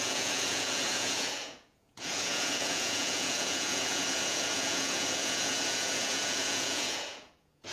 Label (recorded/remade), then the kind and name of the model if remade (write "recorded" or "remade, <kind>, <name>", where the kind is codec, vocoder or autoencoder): remade, vocoder, Vocos